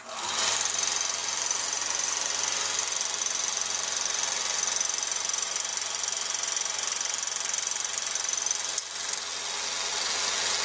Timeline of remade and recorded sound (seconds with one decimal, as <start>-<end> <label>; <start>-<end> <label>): 0.0-10.6 recorded